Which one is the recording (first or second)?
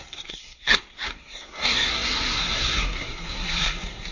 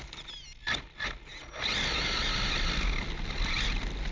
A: second